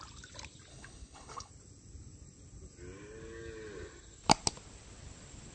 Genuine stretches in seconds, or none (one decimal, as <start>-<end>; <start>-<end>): 0.0-0.7; 1.5-5.5